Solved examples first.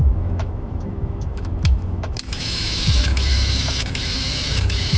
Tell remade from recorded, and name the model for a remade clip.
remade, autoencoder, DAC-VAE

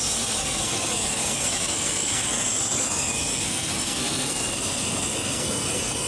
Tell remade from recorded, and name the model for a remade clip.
remade, codec, SNAC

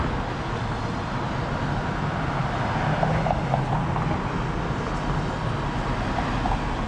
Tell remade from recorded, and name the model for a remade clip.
recorded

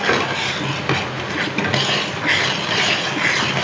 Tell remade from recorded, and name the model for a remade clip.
recorded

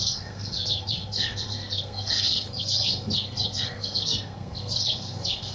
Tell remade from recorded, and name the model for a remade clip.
remade, codec, SNAC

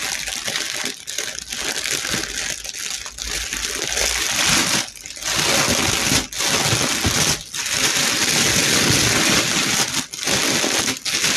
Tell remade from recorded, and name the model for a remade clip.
recorded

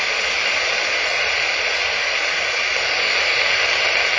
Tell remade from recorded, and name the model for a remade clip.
recorded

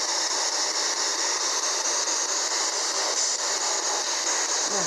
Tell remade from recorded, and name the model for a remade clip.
recorded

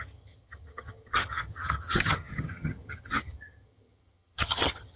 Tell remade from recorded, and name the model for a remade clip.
remade, vocoder, HiFi-GAN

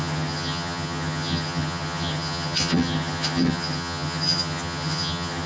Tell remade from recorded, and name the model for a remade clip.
remade, vocoder, HiFi-GAN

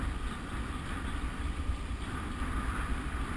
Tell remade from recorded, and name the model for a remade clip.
recorded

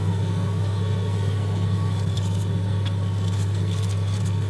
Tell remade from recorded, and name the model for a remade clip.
remade, codec, SNAC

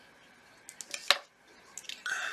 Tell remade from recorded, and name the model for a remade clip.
recorded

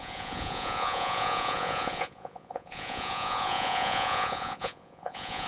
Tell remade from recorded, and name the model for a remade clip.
remade, vocoder, Vocos